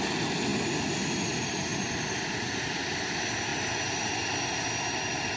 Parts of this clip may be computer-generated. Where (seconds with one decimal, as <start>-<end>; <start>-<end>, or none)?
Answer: none